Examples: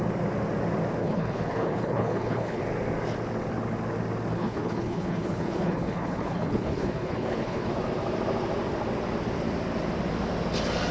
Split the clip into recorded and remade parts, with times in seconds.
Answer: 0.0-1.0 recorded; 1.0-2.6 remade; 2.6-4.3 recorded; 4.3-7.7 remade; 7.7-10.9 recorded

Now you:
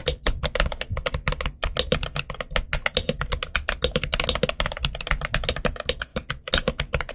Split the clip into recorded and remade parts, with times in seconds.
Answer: 0.0-7.1 recorded

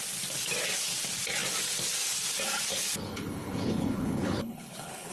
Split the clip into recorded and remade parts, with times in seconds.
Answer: 0.0-2.7 recorded; 2.7-5.1 remade

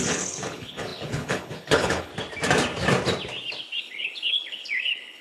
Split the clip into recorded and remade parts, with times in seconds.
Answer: 0.0-2.1 remade; 2.1-3.8 recorded; 3.8-5.2 remade